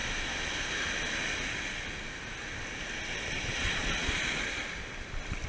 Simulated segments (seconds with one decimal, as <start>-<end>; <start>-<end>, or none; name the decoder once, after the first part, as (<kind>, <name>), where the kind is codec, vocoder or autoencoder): 3.5-4.6 (vocoder, Vocos)